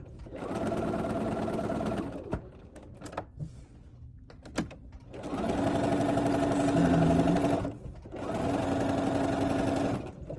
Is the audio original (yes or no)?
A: yes